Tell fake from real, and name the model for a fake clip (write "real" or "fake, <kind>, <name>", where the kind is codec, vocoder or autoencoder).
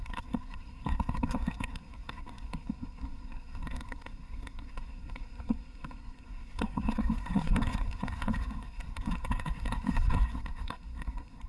fake, codec, SNAC